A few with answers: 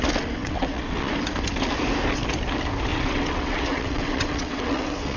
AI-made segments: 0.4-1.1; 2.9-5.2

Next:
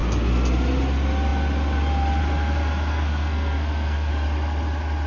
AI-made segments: 2.9-4.1